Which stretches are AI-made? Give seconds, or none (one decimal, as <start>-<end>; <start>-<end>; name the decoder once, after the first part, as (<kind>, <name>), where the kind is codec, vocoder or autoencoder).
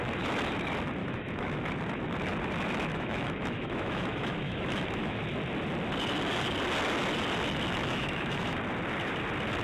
1.0-1.6 (autoencoder, DAC-VAE); 2.9-5.2; 7.8-8.6